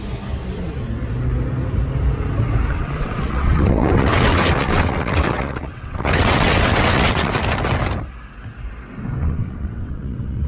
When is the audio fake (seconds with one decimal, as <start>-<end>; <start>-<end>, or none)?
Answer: 2.7-7.3; 9.2-10.5